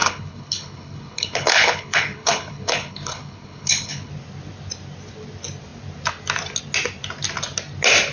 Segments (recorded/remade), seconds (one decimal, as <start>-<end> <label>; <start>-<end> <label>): 0.0-4.1 remade; 4.1-8.1 recorded